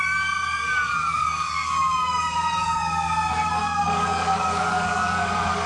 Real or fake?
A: fake